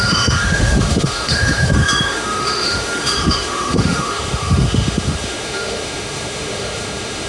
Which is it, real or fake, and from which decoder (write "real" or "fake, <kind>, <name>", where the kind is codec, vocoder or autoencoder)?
fake, autoencoder, DAC-VAE